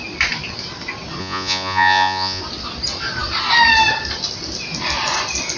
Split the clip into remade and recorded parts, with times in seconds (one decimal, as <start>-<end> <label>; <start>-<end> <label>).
0.0-1.2 recorded; 1.2-2.4 remade; 2.4-5.6 recorded